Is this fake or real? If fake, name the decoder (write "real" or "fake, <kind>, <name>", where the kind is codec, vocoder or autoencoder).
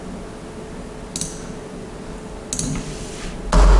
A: real